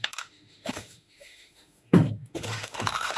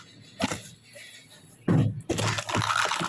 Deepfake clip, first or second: first